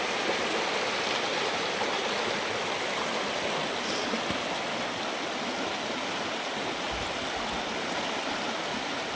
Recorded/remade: recorded